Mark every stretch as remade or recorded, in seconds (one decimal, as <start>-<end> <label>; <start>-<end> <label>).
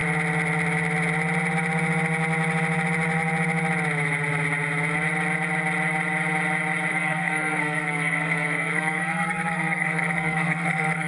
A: 0.0-6.9 recorded; 6.9-11.1 remade